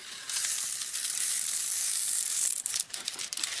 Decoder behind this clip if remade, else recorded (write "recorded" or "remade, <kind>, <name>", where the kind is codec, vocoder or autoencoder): remade, vocoder, BigVGAN v2